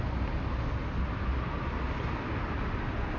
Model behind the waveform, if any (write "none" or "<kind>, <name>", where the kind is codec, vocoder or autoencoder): none